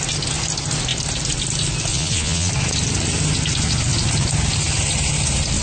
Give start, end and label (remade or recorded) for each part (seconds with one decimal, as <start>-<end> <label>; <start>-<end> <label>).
0.0-1.9 recorded; 1.9-2.5 remade; 2.5-5.6 recorded